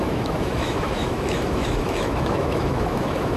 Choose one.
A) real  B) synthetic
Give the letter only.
B